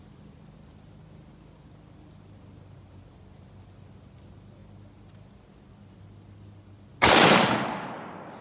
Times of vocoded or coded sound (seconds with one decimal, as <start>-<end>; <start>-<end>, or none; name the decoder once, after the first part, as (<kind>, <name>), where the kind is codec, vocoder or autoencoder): none